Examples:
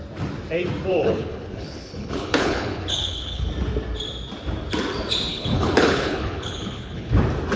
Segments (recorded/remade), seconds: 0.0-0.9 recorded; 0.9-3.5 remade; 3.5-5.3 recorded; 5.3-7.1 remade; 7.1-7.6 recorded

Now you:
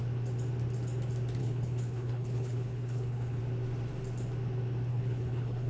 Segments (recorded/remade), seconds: 0.0-1.4 recorded; 1.4-3.4 remade; 3.4-4.9 recorded; 4.9-5.7 remade

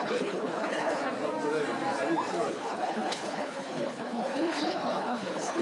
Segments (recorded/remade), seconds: 0.0-1.0 remade; 1.0-2.5 recorded; 2.5-5.6 remade

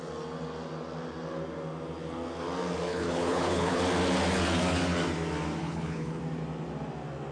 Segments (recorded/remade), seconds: 0.0-2.9 recorded; 2.9-3.8 remade; 3.8-5.6 recorded; 5.6-6.2 remade; 6.2-7.3 recorded